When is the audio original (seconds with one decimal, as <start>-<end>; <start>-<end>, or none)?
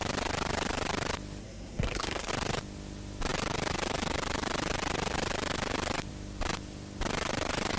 0.0-1.4; 2.3-7.8